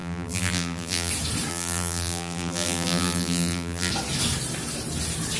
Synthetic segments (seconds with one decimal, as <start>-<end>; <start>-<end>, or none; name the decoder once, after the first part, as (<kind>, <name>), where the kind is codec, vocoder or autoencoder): 0.0-1.1 (vocoder, BigVGAN v2); 1.5-3.9